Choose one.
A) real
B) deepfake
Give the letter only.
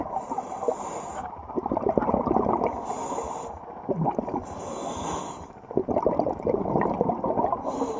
A